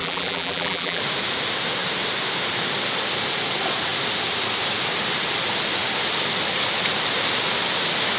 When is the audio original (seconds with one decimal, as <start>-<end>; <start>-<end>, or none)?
1.0-8.2